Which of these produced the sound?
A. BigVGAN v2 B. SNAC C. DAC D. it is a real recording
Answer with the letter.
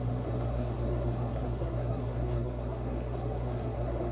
B